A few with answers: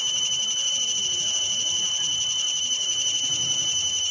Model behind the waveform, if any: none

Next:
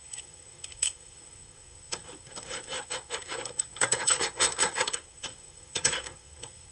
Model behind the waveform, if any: codec, SNAC